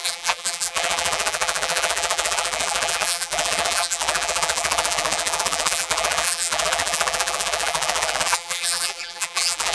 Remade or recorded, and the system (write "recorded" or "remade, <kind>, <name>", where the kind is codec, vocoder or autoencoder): remade, vocoder, BigVGAN v2